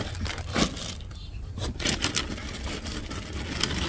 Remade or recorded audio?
recorded